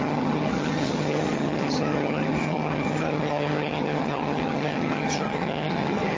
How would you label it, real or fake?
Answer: fake